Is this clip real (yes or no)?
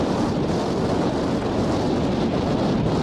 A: yes